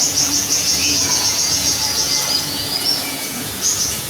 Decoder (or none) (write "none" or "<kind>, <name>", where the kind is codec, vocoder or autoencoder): vocoder, Vocos